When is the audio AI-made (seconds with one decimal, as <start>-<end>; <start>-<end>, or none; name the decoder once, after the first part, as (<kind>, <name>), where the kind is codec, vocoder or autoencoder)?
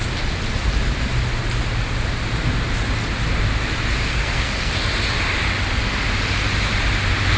4.1-4.7 (codec, SNAC)